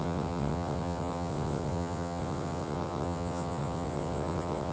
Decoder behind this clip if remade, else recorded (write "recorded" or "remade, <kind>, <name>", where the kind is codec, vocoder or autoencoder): remade, vocoder, WaveNeXt